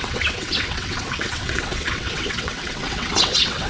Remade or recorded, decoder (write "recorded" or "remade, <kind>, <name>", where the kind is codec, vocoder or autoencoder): remade, vocoder, WaveNeXt